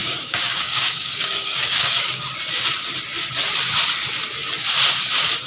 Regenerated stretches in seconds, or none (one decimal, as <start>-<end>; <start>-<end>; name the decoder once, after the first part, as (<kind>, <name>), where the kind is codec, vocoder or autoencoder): 0.0-2.3 (codec, DAC)